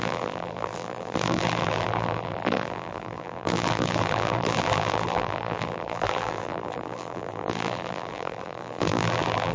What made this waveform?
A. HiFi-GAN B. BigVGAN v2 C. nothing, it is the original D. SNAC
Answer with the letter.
B